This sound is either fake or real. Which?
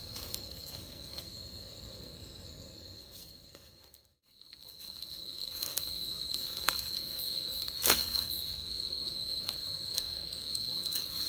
fake